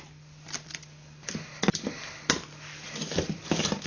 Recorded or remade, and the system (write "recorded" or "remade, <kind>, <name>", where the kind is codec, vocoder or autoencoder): recorded